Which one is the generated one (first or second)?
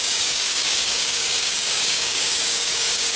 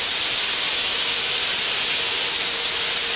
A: first